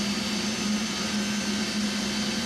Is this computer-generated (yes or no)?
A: no